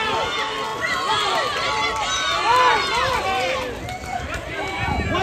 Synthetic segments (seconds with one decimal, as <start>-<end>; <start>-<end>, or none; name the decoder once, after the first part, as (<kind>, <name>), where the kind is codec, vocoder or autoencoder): 0.7-3.5 (vocoder, BigVGAN v2)